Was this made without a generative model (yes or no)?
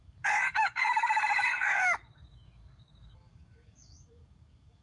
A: no